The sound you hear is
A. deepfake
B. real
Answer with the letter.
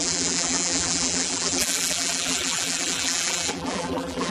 A